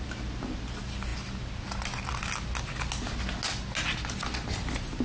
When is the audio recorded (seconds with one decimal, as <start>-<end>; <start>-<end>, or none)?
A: 0.0-5.0